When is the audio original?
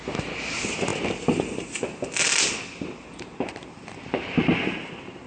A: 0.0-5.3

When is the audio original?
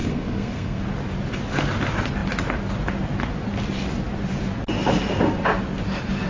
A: 0.8-6.3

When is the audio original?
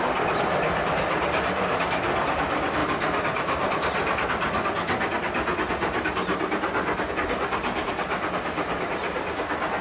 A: 0.0-9.8